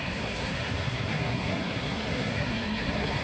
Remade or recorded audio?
remade